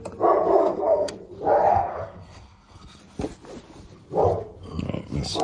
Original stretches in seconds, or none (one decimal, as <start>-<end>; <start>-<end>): 0.0-0.6; 1.1-1.7; 3.0-5.4